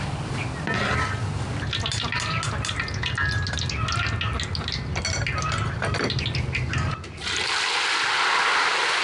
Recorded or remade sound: recorded